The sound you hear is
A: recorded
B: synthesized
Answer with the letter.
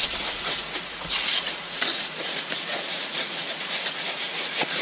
B